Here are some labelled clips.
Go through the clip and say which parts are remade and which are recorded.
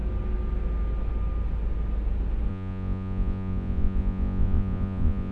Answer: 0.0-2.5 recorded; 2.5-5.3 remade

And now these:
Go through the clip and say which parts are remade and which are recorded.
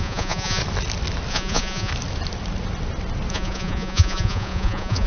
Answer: 0.0-0.6 remade; 0.6-1.3 recorded; 1.3-1.9 remade; 1.9-3.3 recorded; 3.3-5.1 remade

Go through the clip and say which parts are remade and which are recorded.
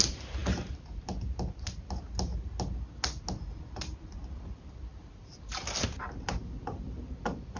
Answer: 0.0-7.6 recorded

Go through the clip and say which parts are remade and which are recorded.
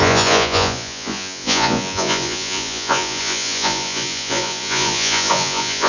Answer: 0.0-5.9 remade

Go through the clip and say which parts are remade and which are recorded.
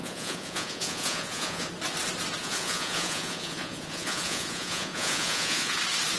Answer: 0.0-1.7 remade; 1.7-2.4 recorded; 2.4-5.8 remade; 5.8-6.2 recorded